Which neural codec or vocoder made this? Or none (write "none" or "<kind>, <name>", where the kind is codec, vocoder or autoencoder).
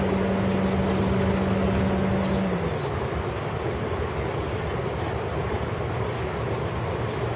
none